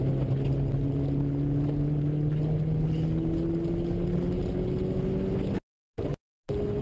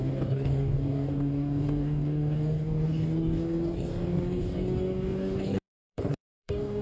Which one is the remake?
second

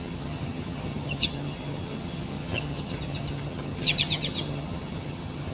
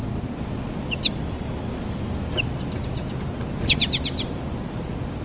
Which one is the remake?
first